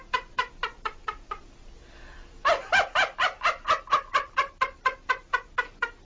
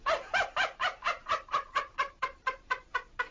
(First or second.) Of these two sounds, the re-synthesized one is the second